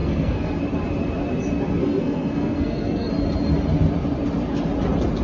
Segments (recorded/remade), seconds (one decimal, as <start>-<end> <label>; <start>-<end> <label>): 0.0-0.6 remade; 0.6-1.8 recorded; 1.8-3.1 remade; 3.1-5.2 recorded